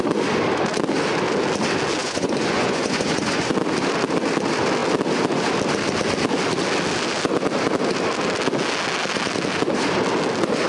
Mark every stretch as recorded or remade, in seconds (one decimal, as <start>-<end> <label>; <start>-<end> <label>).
0.0-2.0 recorded; 2.0-3.5 remade; 3.5-10.7 recorded